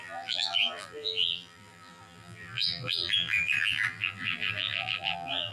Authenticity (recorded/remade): remade